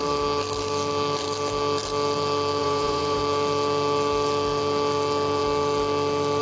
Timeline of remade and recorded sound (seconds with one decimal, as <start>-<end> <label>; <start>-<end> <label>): 0.0-2.6 recorded; 2.6-3.2 remade; 3.2-6.4 recorded